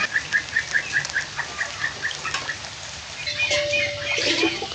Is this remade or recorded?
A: recorded